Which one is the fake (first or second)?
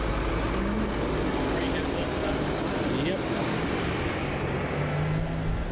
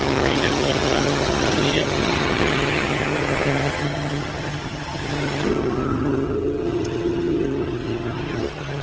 second